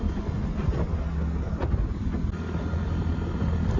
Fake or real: real